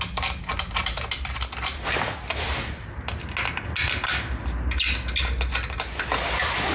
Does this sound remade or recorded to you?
recorded